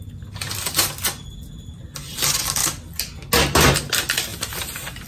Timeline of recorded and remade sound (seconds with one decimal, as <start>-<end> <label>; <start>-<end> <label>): 0.0-5.1 recorded